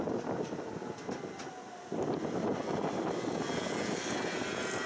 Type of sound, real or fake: real